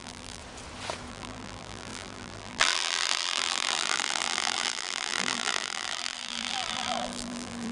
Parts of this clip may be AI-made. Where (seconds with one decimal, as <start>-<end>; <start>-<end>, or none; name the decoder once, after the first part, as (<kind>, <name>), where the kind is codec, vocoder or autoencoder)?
0.0-0.4 (vocoder, BigVGAN v2); 1.1-7.7